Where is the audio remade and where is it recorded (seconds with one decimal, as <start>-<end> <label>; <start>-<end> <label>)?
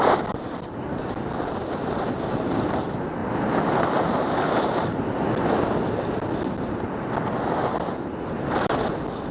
0.0-9.3 recorded